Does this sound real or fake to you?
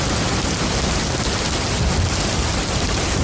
real